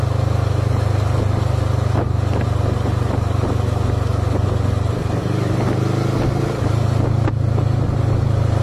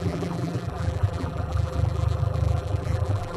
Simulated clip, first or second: second